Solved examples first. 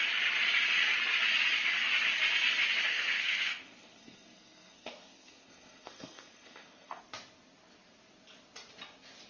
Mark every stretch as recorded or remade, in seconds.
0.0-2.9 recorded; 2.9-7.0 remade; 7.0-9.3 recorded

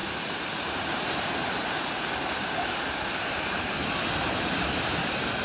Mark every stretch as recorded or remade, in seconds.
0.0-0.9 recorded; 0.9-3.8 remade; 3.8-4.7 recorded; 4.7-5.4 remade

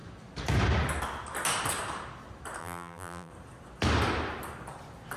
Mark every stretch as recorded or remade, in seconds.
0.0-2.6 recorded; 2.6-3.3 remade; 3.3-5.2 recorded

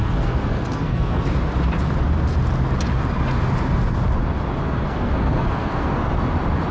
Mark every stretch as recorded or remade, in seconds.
0.0-1.3 remade; 1.3-4.6 recorded; 4.6-6.2 remade; 6.2-6.7 recorded

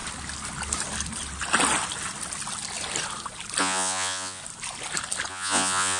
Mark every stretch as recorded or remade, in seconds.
0.0-3.6 recorded; 3.6-4.4 remade; 4.4-5.3 recorded; 5.3-6.0 remade

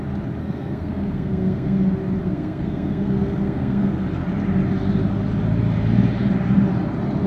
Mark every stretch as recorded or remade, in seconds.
0.0-0.4 recorded; 0.4-1.8 remade; 1.8-2.2 recorded; 2.2-4.0 remade; 4.0-7.3 recorded

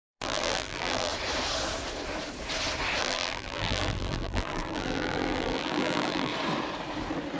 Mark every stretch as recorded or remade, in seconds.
0.0-1.1 remade; 1.1-3.0 recorded; 3.0-6.3 remade; 6.3-7.4 recorded

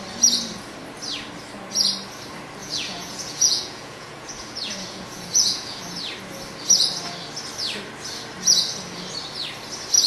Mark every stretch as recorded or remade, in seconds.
0.0-2.6 recorded; 2.6-5.8 remade; 5.8-10.1 recorded